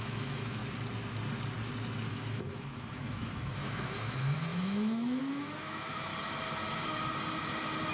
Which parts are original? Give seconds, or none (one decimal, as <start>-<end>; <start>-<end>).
0.6-2.1; 6.1-7.9